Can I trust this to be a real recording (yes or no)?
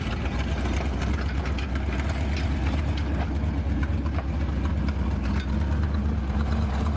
yes